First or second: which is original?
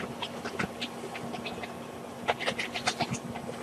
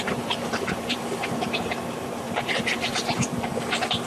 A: first